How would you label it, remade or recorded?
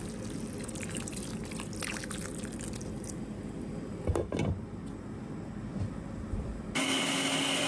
recorded